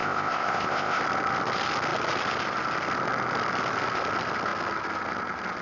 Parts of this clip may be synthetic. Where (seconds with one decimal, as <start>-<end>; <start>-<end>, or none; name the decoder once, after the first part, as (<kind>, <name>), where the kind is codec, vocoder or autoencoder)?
0.0-1.0 (codec, ZipCodec)